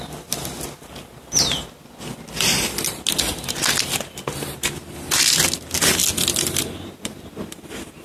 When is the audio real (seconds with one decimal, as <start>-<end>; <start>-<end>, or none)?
0.0-8.0